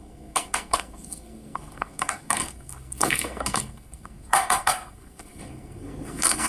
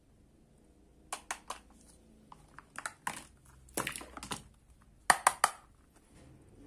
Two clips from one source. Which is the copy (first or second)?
first